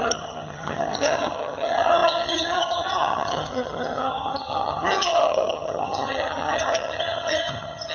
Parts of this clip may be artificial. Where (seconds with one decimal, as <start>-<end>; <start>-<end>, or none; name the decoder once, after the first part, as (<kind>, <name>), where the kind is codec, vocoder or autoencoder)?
0.0-7.9 (vocoder, HiFi-GAN)